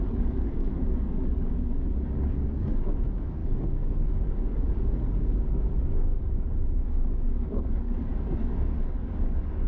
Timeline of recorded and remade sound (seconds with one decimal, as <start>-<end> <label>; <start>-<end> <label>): 0.0-6.1 remade; 6.1-6.8 recorded; 6.8-9.7 remade